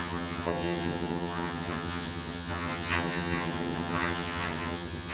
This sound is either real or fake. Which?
fake